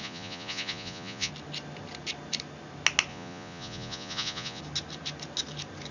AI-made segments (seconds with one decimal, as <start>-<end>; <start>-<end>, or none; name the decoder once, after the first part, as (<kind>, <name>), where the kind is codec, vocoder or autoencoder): 0.0-1.3 (vocoder, Vocos); 3.1-4.6